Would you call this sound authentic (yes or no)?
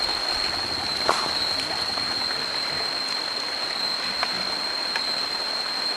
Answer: yes